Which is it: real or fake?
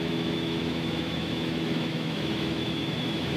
fake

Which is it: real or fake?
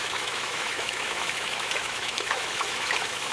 fake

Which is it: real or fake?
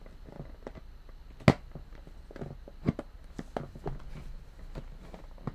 real